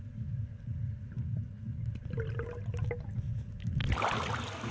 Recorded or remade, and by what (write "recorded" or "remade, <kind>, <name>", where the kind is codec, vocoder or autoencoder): recorded